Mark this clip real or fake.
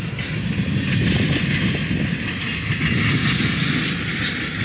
real